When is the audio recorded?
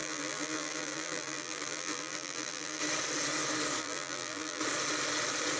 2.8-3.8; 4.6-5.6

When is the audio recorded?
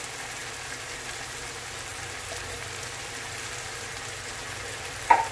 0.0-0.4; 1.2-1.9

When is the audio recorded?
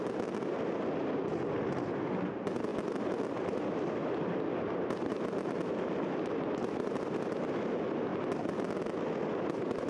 0.0-9.9